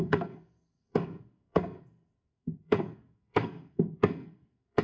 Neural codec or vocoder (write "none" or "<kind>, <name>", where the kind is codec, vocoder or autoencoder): codec, SNAC